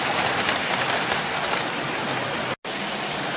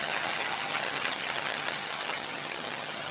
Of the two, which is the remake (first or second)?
second